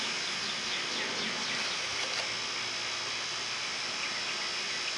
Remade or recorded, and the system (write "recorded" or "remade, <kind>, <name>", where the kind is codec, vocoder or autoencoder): recorded